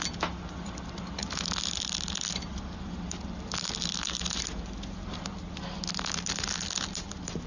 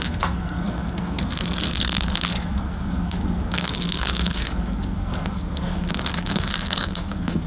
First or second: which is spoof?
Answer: second